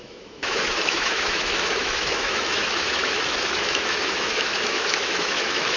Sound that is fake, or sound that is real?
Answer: fake